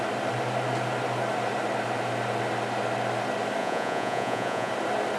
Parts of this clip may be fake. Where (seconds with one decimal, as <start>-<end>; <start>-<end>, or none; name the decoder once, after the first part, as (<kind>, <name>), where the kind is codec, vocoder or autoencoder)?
3.6-4.7 (vocoder, Vocos)